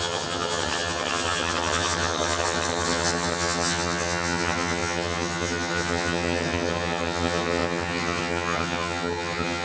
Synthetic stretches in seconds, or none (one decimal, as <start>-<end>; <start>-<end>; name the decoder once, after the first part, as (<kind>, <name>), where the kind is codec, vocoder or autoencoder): 0.0-9.6 (vocoder, HiFi-GAN)